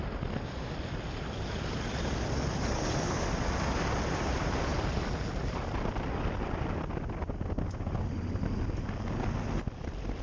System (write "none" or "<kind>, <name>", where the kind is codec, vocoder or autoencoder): none